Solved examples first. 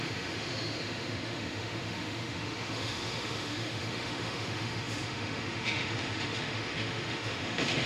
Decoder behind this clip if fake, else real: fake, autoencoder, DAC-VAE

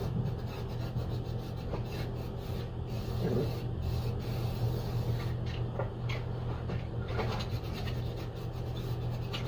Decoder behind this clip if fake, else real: real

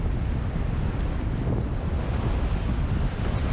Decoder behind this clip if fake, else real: real